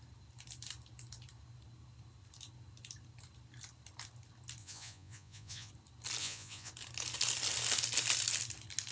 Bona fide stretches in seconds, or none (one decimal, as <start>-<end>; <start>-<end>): 0.0-4.6; 5.7-6.2; 6.7-8.9